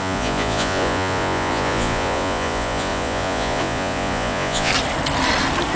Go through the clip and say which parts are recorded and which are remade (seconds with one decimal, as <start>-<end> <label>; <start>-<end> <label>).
0.0-4.7 remade; 4.7-5.8 recorded